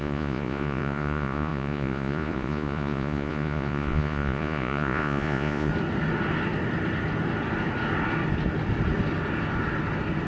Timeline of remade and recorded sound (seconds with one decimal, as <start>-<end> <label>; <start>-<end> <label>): 0.0-5.7 remade; 5.7-10.3 recorded